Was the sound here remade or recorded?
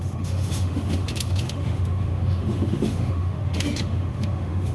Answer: remade